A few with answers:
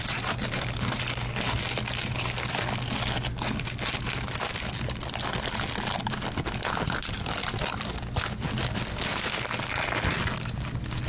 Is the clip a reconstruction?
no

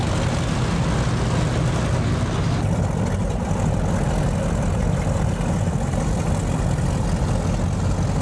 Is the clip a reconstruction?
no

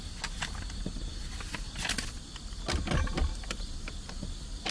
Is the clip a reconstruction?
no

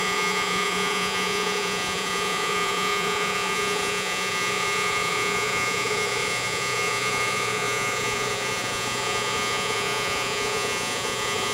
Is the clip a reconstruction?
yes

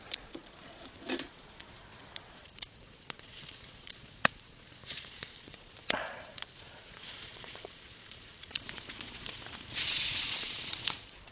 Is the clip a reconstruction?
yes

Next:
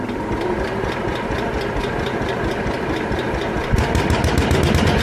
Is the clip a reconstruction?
no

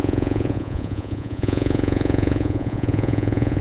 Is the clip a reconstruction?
yes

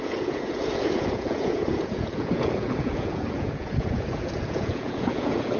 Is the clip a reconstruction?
yes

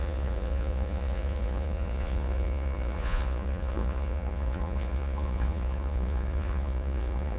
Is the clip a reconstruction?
yes